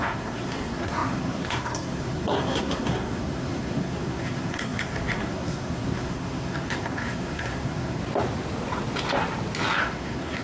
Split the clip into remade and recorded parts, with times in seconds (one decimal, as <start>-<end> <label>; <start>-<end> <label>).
0.0-8.0 remade; 8.0-9.8 recorded; 9.8-10.4 remade